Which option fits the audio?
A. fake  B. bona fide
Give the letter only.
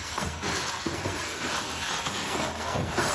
A